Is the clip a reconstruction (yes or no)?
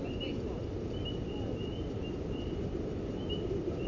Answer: no